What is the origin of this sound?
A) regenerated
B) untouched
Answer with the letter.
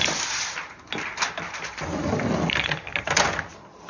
B